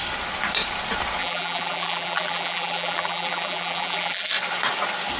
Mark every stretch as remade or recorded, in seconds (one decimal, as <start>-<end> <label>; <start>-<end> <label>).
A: 0.0-1.2 recorded; 1.2-4.3 remade; 4.3-5.2 recorded

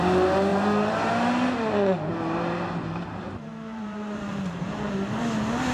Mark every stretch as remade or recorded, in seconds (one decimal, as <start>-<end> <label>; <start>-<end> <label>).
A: 0.0-0.5 recorded; 0.5-1.1 remade; 1.1-2.1 recorded; 2.1-5.2 remade; 5.2-5.7 recorded

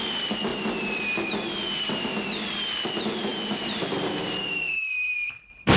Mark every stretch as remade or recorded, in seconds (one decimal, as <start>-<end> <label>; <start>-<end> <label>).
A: 0.0-0.5 remade; 0.5-2.0 recorded; 2.0-3.3 remade; 3.3-4.1 recorded; 4.1-5.8 remade